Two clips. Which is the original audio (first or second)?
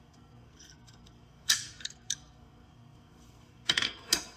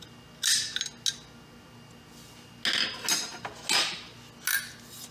second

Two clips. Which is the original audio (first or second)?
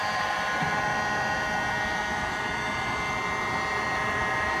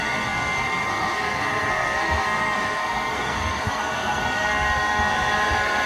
first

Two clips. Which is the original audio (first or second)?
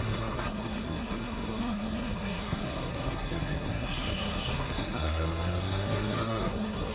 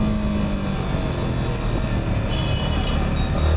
second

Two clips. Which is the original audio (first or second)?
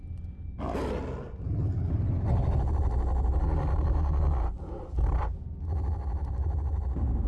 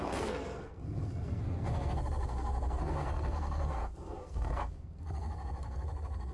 first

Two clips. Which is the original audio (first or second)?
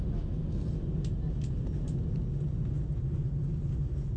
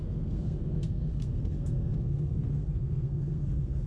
first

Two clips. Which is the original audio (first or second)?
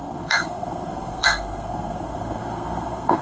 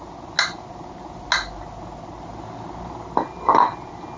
second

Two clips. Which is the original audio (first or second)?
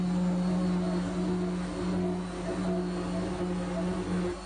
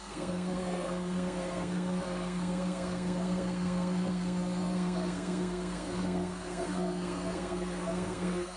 first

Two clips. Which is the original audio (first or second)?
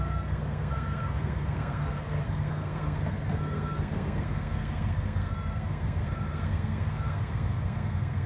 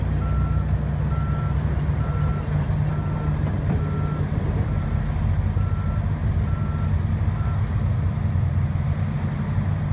second